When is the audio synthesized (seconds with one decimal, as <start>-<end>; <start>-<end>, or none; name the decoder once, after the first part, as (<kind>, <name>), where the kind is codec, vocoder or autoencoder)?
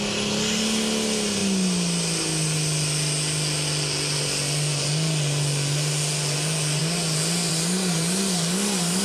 none